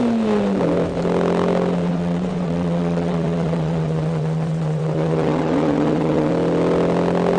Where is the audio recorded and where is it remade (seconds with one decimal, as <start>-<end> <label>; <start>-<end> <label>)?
0.0-1.9 recorded; 1.9-6.3 remade; 6.3-7.4 recorded